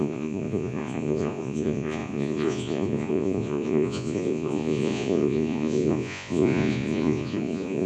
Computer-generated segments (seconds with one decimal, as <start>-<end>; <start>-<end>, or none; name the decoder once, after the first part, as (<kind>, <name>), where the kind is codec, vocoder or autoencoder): 0.0-7.9 (vocoder, Vocos)